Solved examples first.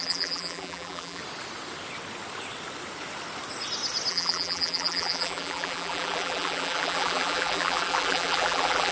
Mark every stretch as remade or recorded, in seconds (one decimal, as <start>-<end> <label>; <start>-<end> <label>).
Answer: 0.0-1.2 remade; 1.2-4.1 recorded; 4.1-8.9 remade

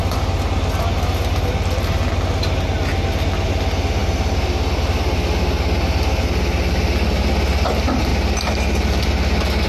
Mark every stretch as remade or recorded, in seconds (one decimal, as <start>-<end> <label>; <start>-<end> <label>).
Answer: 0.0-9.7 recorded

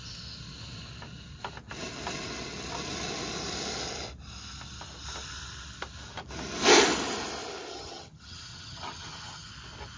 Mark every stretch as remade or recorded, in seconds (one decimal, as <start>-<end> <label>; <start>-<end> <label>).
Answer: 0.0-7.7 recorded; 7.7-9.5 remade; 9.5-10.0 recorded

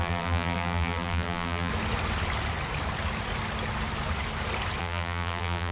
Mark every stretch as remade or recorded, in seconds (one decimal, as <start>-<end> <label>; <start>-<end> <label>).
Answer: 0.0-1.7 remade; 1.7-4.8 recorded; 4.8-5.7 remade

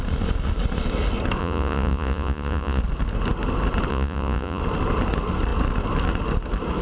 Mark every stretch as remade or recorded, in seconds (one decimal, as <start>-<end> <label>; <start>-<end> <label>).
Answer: 0.0-1.4 recorded; 1.4-2.8 remade; 2.8-3.9 recorded; 3.9-4.6 remade; 4.6-6.8 recorded